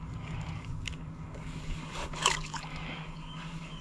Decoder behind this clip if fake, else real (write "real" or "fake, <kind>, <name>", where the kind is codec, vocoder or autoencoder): fake, codec, DAC